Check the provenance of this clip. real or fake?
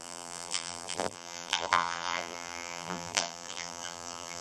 fake